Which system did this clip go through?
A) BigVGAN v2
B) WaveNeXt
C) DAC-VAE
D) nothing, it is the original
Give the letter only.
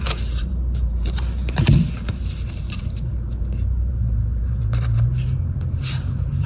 A